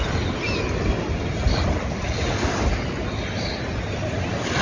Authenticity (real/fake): real